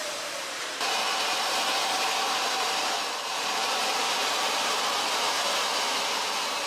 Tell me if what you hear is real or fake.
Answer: fake